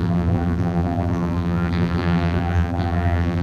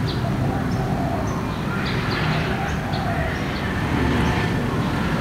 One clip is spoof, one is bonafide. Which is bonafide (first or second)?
second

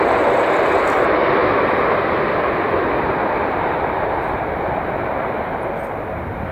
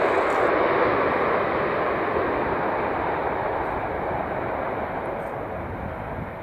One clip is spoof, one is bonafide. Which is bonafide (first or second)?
second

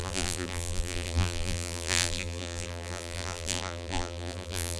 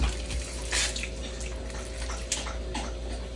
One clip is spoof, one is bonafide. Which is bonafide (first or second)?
second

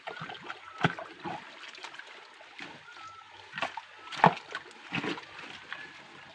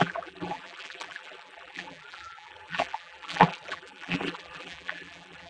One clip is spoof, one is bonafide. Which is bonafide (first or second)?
first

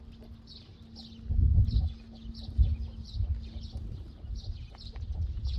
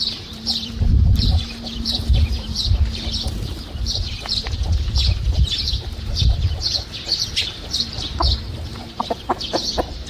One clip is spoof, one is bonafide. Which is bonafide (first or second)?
first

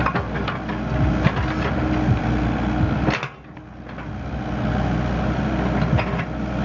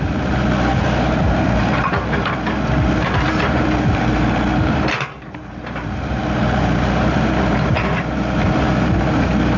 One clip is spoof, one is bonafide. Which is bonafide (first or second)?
first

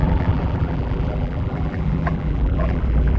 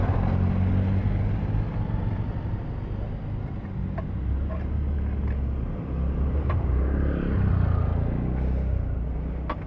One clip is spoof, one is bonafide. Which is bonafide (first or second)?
second